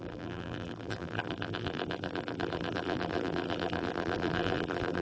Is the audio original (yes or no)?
no